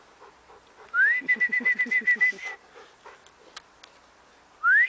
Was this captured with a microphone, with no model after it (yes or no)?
yes